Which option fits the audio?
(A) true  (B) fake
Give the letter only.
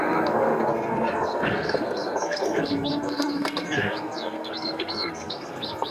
B